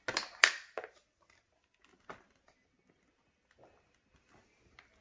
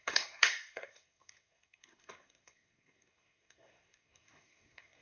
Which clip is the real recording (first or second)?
first